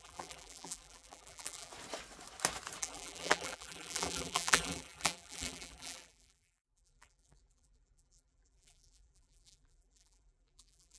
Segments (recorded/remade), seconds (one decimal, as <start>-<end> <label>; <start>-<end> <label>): 0.0-1.7 remade; 1.7-2.8 recorded; 2.8-11.0 remade